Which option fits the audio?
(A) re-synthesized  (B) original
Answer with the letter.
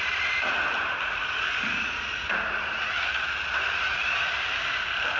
B